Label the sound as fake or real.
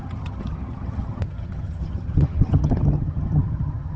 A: fake